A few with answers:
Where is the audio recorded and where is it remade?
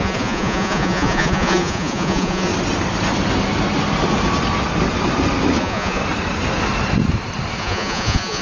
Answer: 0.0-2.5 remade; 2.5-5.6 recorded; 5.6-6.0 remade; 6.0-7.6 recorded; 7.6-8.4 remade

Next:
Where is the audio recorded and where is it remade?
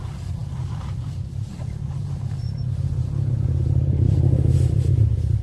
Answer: 0.0-5.4 recorded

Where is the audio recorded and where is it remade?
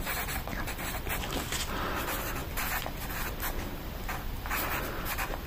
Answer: 0.0-5.5 recorded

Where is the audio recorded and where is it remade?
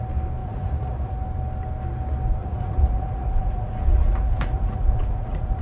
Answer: 0.0-0.4 recorded; 0.4-1.1 remade; 1.1-2.4 recorded; 2.4-5.6 remade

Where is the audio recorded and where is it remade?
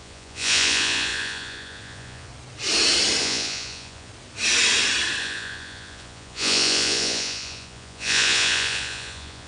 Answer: 0.0-2.3 remade; 2.3-3.2 recorded; 3.2-4.1 remade; 4.1-5.2 recorded; 5.2-9.5 remade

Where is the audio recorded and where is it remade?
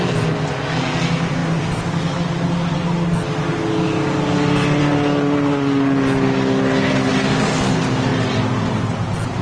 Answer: 0.0-9.4 recorded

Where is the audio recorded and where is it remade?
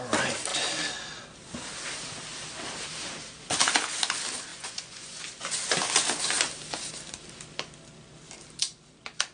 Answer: 0.0-4.5 recorded; 4.5-5.2 remade; 5.2-9.3 recorded